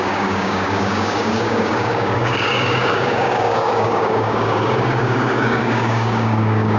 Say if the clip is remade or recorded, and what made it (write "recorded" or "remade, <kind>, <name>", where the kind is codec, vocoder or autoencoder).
remade, codec, DAC